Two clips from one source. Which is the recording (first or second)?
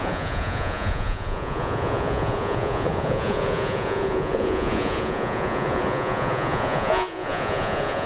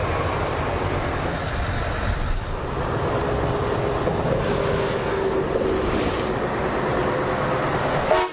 second